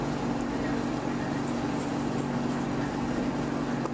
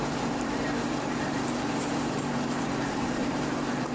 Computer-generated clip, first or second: second